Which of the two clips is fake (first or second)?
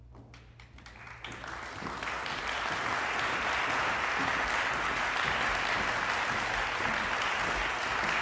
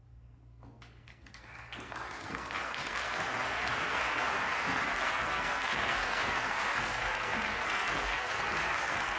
second